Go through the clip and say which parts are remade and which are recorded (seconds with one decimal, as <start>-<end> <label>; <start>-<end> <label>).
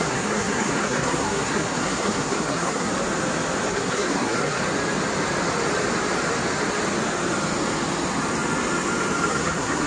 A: 0.0-2.9 remade; 2.9-3.7 recorded; 3.7-4.6 remade; 4.6-9.3 recorded; 9.3-9.9 remade